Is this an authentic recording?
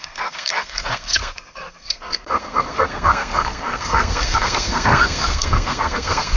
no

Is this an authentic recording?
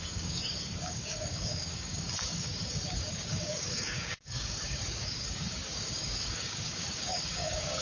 no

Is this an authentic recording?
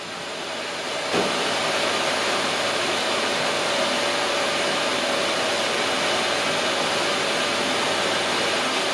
yes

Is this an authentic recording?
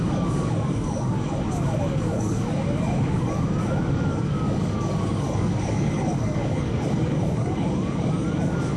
no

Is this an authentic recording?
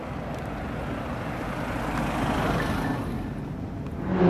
yes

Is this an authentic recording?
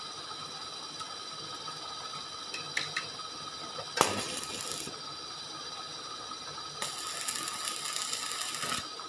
yes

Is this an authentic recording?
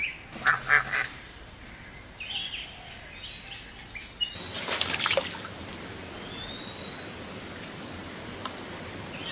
yes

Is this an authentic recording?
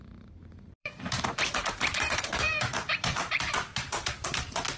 no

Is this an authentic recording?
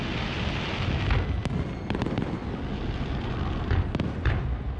yes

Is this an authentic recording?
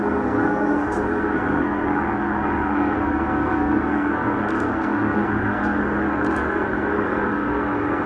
no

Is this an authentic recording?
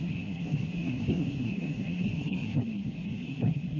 no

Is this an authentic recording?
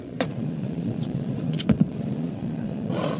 no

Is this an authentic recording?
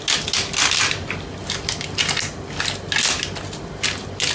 yes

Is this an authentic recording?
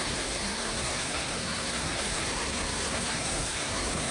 no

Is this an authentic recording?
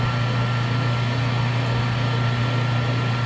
yes